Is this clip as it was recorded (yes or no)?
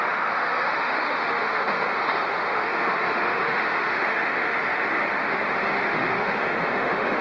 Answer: no